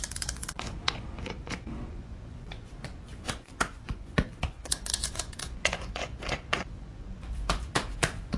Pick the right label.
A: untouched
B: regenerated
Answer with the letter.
B